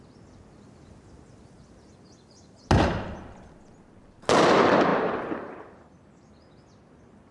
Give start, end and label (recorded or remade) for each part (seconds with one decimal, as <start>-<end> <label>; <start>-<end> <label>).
0.0-7.3 recorded